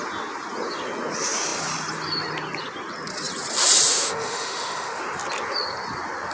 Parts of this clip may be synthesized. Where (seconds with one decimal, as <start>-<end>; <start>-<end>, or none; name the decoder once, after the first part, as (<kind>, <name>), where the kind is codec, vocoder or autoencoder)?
3.9-5.0 (autoencoder, DAC-VAE)